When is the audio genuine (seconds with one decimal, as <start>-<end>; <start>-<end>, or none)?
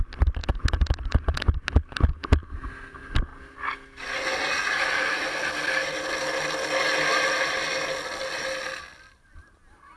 0.0-10.0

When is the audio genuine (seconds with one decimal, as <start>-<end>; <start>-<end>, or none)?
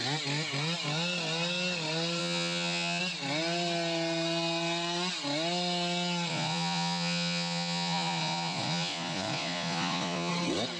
0.0-2.2; 3.0-6.3; 10.3-10.8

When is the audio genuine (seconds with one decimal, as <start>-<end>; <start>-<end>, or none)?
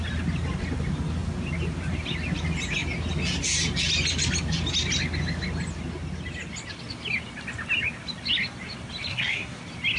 0.0-9.1; 9.6-10.0